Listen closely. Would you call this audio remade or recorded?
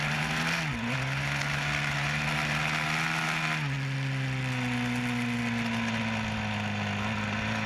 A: recorded